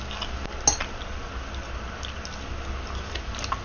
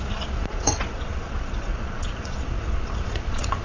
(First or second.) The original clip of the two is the first